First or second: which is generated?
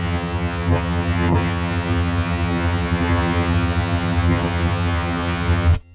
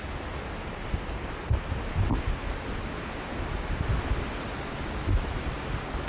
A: first